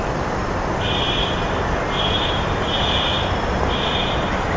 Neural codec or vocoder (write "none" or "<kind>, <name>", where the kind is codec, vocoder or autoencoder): none